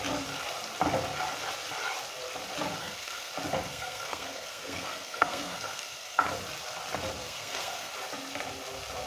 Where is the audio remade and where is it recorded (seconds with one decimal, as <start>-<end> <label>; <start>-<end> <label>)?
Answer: 0.0-2.8 recorded; 2.8-3.3 remade; 3.3-3.7 recorded; 3.7-6.2 remade; 6.2-7.2 recorded; 7.2-7.9 remade; 7.9-9.1 recorded